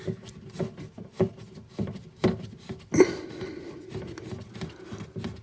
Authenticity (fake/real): real